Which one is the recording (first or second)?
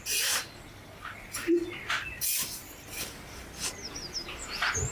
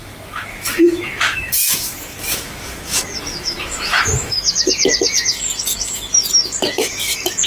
first